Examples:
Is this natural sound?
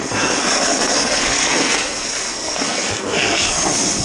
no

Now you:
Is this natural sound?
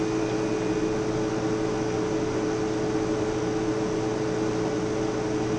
yes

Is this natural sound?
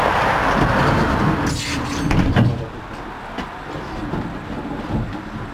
yes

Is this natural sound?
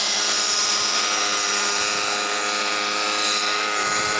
yes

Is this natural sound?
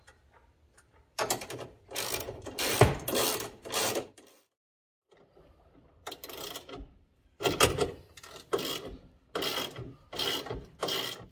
no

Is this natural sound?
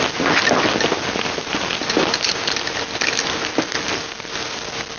yes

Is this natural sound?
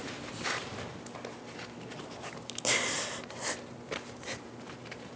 yes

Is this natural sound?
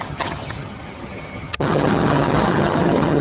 no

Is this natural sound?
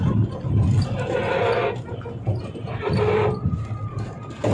yes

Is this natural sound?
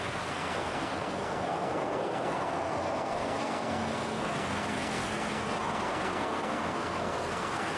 no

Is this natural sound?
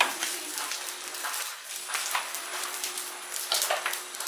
yes